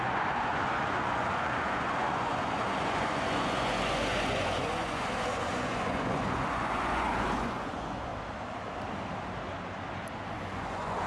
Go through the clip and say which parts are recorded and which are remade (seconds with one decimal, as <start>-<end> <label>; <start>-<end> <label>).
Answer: 0.0-8.1 remade; 8.1-10.3 recorded; 10.3-11.1 remade

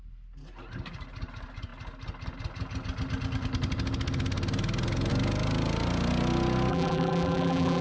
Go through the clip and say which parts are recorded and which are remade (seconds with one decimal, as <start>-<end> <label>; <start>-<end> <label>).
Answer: 0.0-6.7 recorded; 6.7-7.8 remade

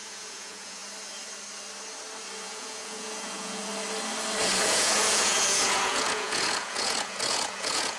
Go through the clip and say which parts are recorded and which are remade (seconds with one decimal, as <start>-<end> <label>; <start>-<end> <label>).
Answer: 0.0-0.8 remade; 0.8-2.4 recorded; 2.4-3.7 remade; 3.7-4.4 recorded; 4.4-8.0 remade

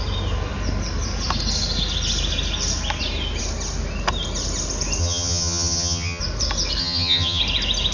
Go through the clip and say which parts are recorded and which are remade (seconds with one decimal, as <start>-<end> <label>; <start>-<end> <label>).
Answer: 0.0-5.0 recorded; 5.0-6.2 remade; 6.2-6.8 recorded; 6.8-7.4 remade; 7.4-7.9 recorded

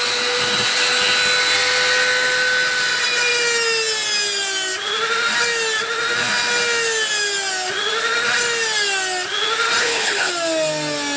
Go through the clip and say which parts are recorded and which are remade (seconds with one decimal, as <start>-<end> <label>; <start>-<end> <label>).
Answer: 0.0-9.8 recorded; 9.8-10.3 remade; 10.3-11.2 recorded